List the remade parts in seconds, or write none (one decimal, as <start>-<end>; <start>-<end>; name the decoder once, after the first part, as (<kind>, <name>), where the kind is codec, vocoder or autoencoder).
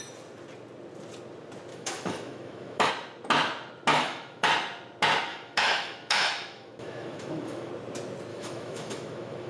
1.7-2.9 (autoencoder, DAC-VAE); 3.9-4.5; 5.3-7.7; 8.3-9.5